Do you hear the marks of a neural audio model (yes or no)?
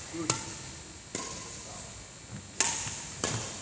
no